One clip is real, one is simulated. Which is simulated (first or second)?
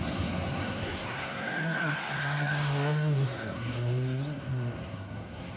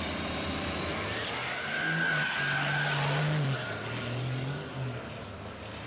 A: first